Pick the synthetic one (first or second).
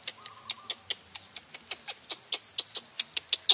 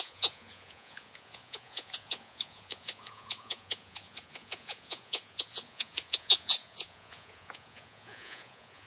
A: second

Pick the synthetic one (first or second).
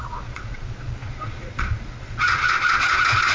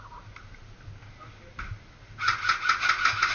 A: first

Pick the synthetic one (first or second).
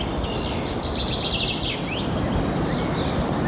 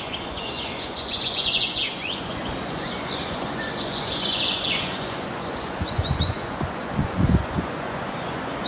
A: second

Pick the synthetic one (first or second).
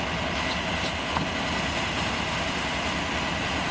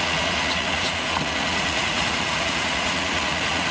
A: second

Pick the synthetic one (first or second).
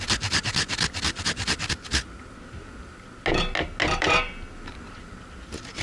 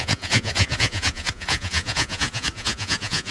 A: second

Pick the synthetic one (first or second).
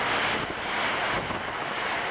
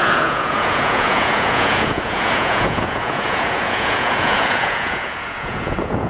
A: second